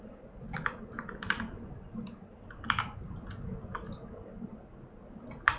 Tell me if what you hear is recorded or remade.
recorded